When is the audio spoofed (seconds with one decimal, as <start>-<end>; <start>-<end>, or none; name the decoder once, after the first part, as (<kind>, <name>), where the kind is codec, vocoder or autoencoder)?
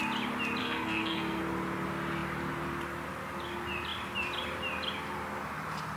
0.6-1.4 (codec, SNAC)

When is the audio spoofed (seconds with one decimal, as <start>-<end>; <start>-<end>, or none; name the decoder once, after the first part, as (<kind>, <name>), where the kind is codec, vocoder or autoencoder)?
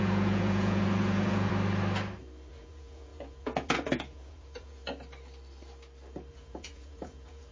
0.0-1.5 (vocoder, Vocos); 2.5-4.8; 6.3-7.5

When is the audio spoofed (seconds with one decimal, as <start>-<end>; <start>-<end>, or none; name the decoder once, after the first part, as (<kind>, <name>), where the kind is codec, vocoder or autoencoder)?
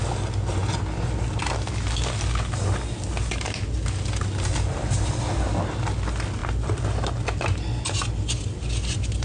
none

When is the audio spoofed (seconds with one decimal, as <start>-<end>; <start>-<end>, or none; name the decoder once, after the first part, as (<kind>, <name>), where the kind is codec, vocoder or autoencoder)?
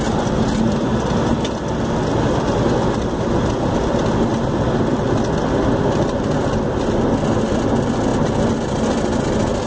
none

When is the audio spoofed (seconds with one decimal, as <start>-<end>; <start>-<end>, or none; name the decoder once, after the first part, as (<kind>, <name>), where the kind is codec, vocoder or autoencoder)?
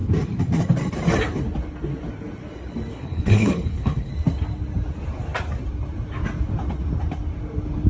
2.9-4.1 (codec, HILCodec)